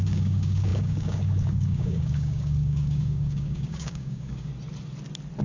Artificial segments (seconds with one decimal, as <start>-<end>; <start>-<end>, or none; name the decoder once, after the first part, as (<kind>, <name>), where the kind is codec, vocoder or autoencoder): 0.0-4.5 (codec, DAC)